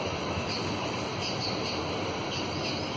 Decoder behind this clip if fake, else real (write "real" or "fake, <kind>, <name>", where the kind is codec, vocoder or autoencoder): real